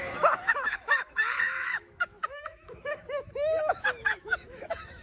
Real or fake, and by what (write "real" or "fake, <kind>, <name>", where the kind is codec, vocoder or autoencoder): fake, autoencoder, DAC-VAE